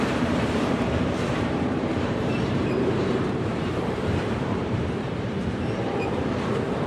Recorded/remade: remade